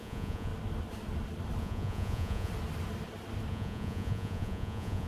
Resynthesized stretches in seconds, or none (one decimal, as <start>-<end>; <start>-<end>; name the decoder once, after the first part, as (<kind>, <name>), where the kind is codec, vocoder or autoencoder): 0.0-0.5 (vocoder, Vocos); 1.6-2.5; 3.5-5.1

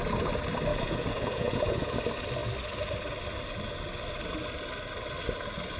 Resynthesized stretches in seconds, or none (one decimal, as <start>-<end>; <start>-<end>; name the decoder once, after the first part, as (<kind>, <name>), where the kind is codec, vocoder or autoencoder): 0.7-2.0 (vocoder, Vocos)